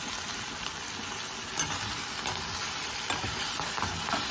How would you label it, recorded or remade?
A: recorded